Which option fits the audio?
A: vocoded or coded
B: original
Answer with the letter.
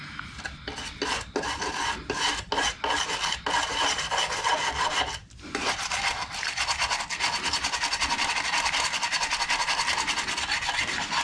B